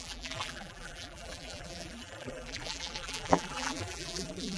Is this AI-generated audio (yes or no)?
yes